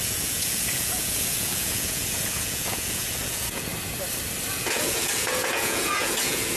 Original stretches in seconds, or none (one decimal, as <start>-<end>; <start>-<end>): 3.7-4.5